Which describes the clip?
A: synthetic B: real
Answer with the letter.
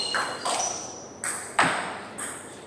B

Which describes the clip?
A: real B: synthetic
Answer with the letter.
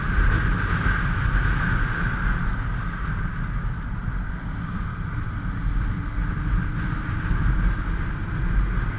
A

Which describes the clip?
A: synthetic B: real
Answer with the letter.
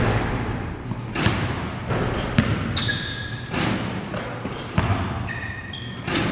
B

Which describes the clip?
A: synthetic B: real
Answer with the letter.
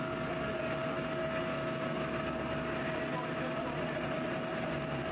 B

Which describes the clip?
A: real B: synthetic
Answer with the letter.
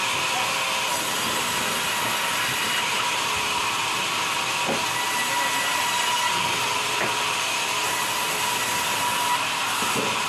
A